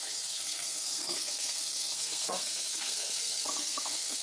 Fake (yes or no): yes